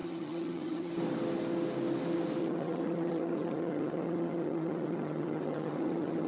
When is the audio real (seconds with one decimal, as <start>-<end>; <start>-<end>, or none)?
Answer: 0.9-2.4